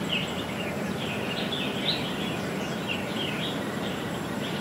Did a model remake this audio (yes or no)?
no